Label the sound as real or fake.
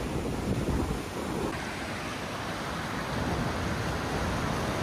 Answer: real